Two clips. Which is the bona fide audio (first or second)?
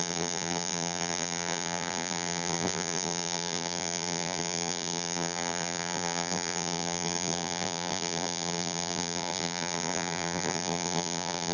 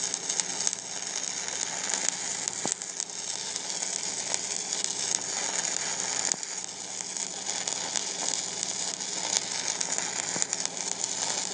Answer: second